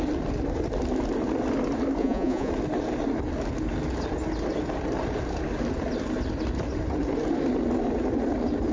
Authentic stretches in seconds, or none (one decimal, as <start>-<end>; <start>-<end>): 0.0-2.0; 2.5-8.7